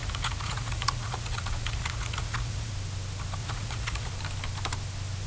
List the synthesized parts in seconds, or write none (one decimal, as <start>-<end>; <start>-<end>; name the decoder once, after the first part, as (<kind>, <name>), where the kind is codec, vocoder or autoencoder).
0.0-2.7 (vocoder, Vocos); 3.4-4.1